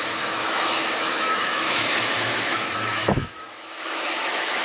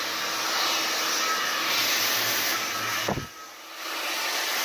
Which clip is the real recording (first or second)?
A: second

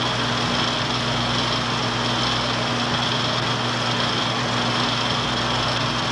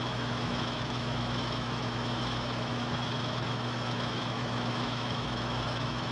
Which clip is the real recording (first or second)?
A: first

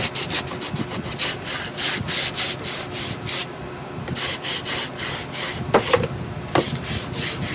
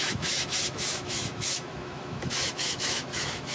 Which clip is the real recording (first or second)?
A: first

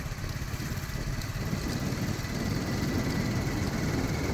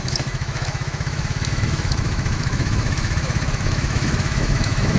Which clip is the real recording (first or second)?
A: first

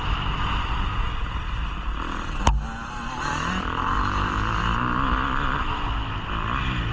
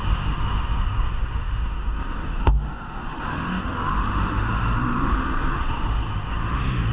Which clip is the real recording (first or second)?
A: first